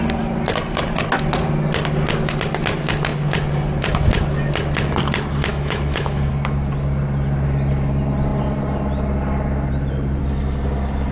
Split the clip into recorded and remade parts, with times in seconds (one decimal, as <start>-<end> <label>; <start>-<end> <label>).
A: 0.0-5.5 recorded; 5.5-6.3 remade; 6.3-11.1 recorded